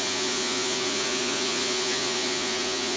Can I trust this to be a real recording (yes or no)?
no